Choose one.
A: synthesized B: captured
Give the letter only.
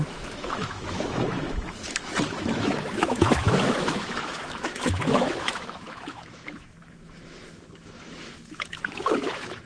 A